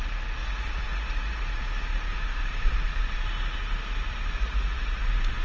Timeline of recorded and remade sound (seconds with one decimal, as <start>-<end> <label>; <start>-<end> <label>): 0.0-0.4 recorded; 0.4-1.6 remade; 1.6-4.4 recorded; 4.4-5.0 remade; 5.0-5.4 recorded